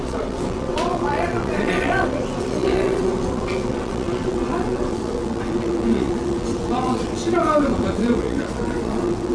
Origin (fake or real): fake